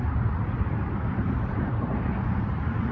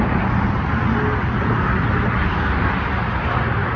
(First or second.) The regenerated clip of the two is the first